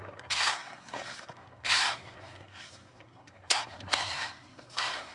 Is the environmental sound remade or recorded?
remade